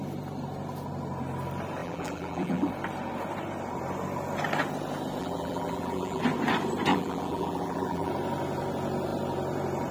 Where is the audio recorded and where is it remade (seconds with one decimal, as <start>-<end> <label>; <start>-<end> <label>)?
0.0-1.8 recorded; 1.8-2.7 remade; 2.7-5.2 recorded; 5.2-6.2 remade; 6.2-6.9 recorded; 6.9-8.1 remade; 8.1-9.9 recorded